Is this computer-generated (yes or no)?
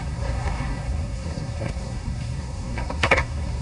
yes